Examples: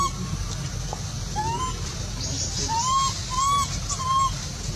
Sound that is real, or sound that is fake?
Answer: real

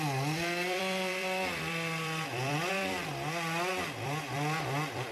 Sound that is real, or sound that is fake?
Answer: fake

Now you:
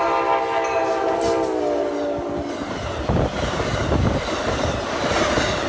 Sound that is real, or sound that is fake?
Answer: real